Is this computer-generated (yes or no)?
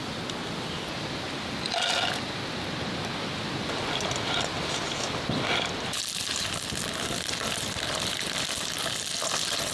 no